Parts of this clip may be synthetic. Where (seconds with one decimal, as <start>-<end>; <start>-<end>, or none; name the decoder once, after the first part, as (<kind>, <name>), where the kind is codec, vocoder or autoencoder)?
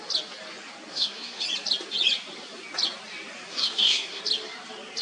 0.9-1.4 (codec, SNAC); 3.5-4.2